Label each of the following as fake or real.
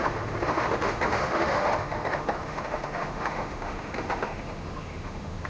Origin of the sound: fake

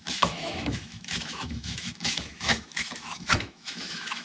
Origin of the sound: fake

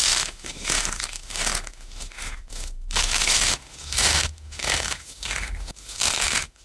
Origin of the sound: fake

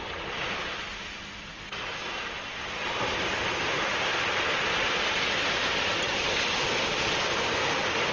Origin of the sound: real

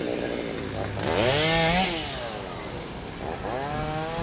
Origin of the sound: real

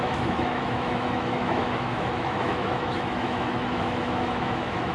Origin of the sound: fake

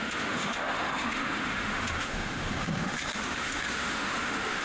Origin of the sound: fake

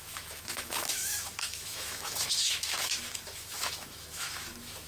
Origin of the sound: fake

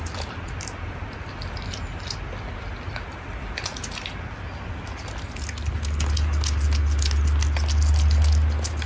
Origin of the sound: real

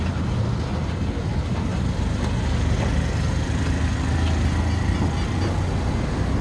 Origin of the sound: real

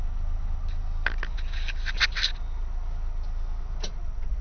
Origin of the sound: real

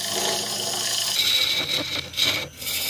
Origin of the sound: real